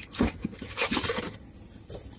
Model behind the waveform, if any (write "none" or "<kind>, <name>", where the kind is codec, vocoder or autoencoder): none